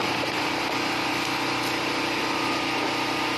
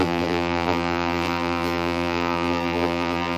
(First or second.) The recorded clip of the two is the first